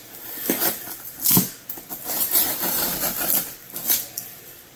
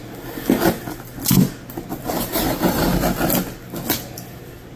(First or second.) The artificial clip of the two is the first